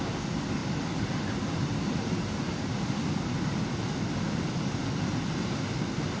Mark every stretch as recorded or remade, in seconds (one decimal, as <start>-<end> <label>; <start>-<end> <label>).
0.0-0.6 recorded; 0.6-1.2 remade; 1.2-1.6 recorded; 1.6-4.7 remade; 4.7-6.2 recorded